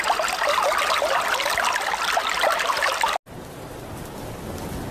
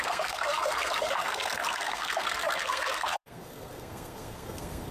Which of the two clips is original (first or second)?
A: first